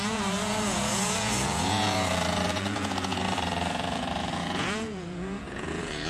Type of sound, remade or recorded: remade